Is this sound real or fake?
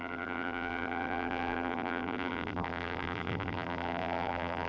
fake